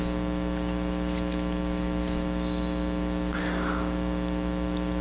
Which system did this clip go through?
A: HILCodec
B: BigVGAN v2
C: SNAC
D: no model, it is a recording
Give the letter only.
D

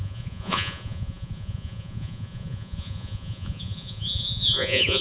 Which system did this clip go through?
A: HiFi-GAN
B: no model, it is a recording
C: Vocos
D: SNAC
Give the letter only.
C